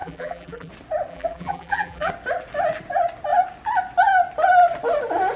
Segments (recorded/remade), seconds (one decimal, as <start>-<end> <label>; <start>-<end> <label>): 0.0-0.7 remade; 0.7-1.1 recorded; 1.1-2.1 remade; 2.1-5.4 recorded